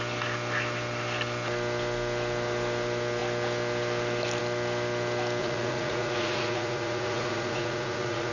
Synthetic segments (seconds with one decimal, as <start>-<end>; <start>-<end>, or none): 5.4-8.3